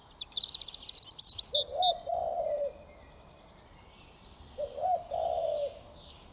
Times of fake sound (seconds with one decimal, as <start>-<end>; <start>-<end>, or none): 2.2-4.3